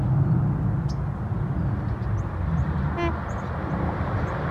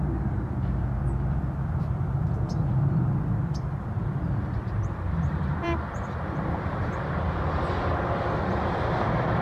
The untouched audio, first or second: first